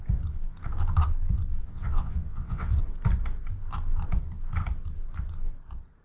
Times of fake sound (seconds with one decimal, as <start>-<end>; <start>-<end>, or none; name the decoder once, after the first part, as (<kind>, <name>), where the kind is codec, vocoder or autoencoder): 1.5-2.8 (vocoder, WaveNeXt)